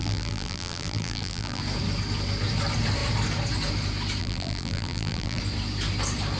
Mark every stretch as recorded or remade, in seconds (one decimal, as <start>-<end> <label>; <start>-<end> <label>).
0.0-1.6 remade; 1.6-4.2 recorded; 4.2-5.4 remade; 5.4-6.4 recorded